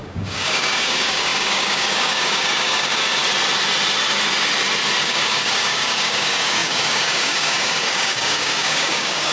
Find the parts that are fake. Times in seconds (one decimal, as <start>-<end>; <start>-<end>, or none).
0.0-3.2; 5.0-9.3